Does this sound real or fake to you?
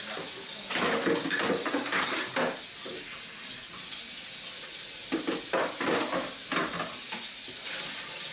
real